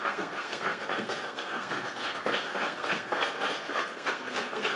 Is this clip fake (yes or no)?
yes